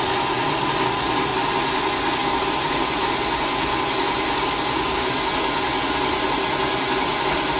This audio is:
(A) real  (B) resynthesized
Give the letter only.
A